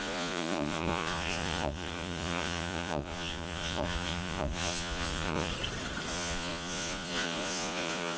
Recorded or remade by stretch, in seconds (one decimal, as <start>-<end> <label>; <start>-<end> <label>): 0.0-5.5 remade; 5.5-6.1 recorded; 6.1-8.2 remade